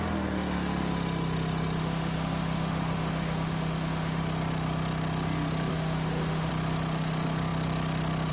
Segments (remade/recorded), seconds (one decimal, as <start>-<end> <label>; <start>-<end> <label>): 0.0-1.8 recorded; 1.8-4.2 remade; 4.2-5.7 recorded; 5.7-6.5 remade; 6.5-8.3 recorded